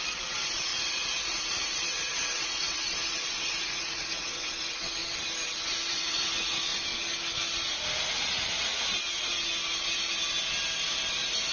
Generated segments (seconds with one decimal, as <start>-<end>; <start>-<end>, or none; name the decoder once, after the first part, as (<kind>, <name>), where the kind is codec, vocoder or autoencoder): 0.0-5.0 (vocoder, Vocos); 5.9-6.7; 8.1-8.7; 11.1-11.5